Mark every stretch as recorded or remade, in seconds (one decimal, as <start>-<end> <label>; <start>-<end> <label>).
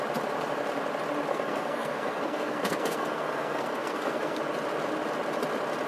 0.0-1.3 recorded; 1.3-4.4 remade; 4.4-5.9 recorded